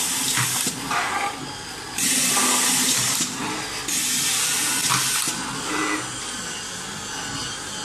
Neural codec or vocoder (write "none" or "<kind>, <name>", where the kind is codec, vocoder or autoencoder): none